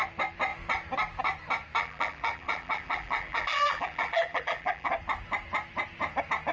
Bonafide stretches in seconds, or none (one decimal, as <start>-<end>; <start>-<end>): 0.0-1.8; 4.9-6.5